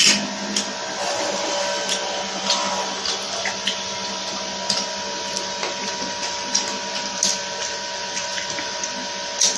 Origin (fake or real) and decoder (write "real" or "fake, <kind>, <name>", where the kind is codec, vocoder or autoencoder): real